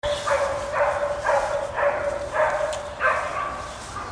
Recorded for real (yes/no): yes